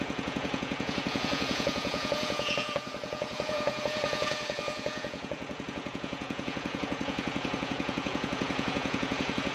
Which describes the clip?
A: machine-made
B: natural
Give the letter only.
A